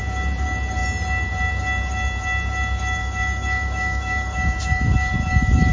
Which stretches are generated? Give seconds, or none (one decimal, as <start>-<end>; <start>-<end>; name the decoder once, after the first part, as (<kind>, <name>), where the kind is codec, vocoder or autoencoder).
3.0-5.7 (autoencoder, DAC-VAE)